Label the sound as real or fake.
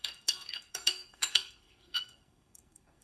fake